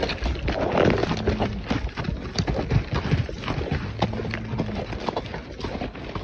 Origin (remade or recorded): recorded